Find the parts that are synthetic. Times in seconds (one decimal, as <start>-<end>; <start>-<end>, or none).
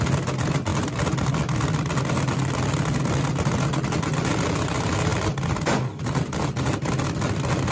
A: 0.7-3.0; 5.1-6.9